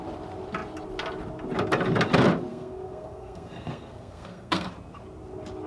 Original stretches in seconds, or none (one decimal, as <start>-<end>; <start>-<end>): 0.0-2.5; 4.7-5.7